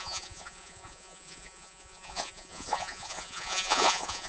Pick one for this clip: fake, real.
fake